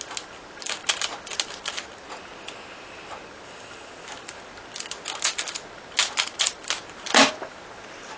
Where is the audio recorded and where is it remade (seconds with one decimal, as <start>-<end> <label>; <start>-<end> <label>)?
0.0-8.2 recorded